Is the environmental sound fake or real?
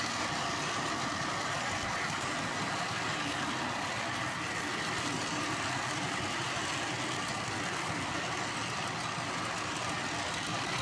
real